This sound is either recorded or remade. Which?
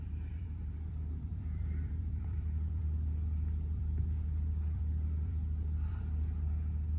remade